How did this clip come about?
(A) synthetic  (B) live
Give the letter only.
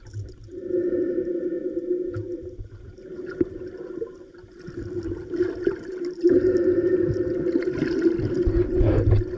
B